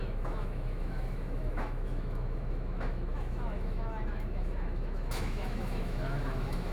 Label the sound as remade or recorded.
remade